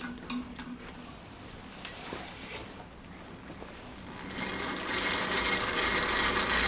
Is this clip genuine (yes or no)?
yes